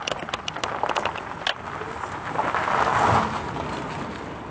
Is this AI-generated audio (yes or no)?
no